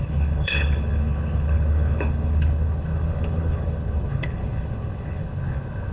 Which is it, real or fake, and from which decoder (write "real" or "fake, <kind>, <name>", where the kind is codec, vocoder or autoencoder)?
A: fake, codec, HILCodec